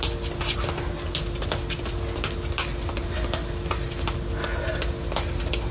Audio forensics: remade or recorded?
recorded